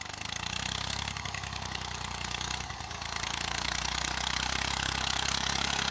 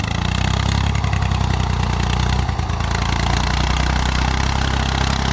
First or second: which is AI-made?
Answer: first